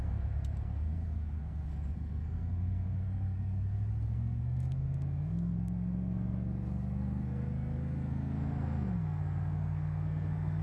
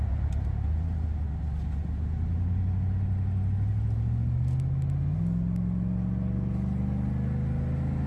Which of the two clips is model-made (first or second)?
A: first